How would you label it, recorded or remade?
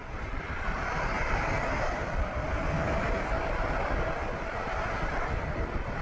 recorded